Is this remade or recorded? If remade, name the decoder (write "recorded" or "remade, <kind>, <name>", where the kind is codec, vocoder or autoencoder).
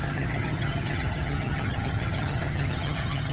remade, vocoder, HiFi-GAN